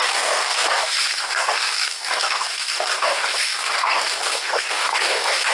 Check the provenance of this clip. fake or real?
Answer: fake